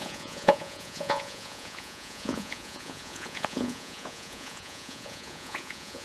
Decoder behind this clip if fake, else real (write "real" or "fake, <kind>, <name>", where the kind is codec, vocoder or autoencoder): fake, vocoder, Vocos